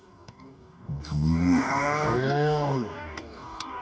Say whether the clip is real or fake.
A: fake